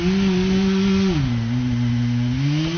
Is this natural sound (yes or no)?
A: yes